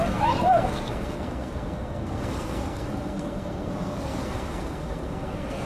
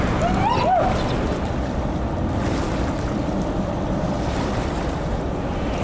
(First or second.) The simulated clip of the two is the first